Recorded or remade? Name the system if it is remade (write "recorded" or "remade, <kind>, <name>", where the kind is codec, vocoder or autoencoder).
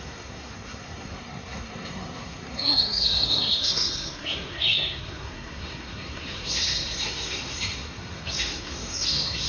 remade, codec, SNAC